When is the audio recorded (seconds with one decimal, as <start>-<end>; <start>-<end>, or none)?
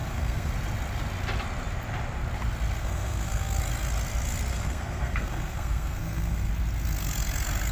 0.5-2.8; 3.6-4.5; 6.5-7.7